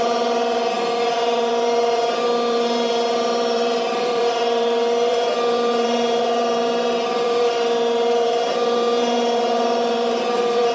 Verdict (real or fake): fake